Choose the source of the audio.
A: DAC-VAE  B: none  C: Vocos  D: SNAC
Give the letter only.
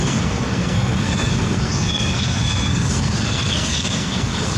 D